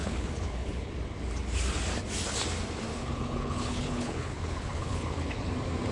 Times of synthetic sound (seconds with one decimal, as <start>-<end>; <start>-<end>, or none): 0.0-0.9; 2.9-5.5